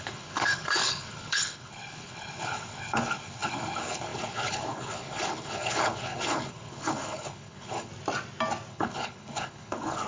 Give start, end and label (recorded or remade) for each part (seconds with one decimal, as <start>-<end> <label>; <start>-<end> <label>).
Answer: 0.0-7.9 remade; 7.9-8.7 recorded; 8.7-10.1 remade